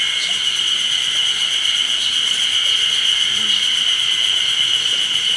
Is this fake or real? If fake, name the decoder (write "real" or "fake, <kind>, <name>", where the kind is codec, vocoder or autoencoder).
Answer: real